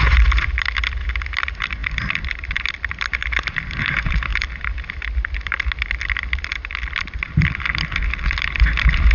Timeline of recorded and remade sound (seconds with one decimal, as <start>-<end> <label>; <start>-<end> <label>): 0.0-4.3 recorded; 4.3-5.0 remade; 5.0-9.1 recorded